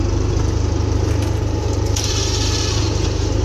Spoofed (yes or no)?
no